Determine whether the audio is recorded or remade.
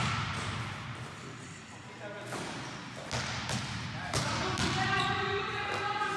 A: recorded